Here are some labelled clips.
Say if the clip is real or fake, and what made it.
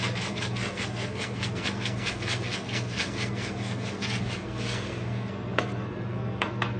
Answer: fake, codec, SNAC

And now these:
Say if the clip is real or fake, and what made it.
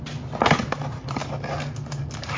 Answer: real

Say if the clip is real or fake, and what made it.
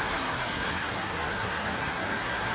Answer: fake, codec, SNAC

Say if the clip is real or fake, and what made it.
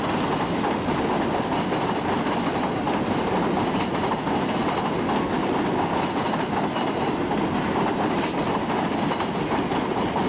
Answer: real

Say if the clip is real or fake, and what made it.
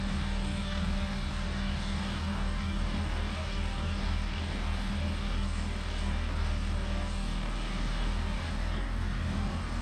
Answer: fake, codec, DAC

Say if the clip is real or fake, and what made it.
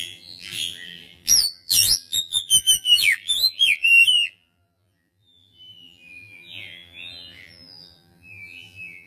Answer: fake, vocoder, BigVGAN v2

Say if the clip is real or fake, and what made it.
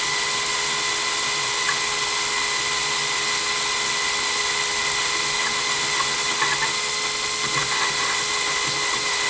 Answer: real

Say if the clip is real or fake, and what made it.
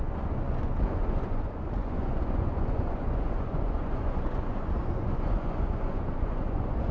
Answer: fake, vocoder, Vocos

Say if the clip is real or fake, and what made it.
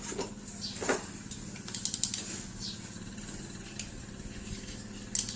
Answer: real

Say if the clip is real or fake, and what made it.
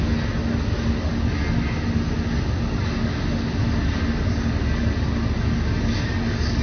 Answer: real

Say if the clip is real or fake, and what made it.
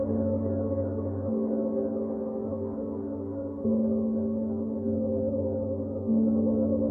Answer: fake, autoencoder, DAC-VAE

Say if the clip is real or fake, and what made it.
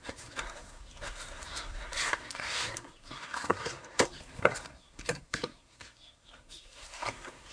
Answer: fake, codec, SNAC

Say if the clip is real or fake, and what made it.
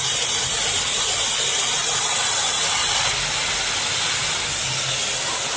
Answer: real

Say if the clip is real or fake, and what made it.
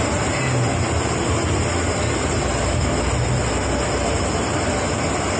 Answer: real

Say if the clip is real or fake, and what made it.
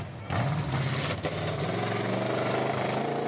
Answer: real